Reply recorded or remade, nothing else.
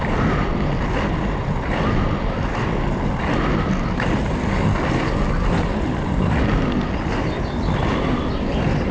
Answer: recorded